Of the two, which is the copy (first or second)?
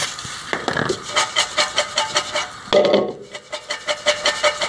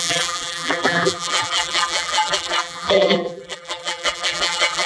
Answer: second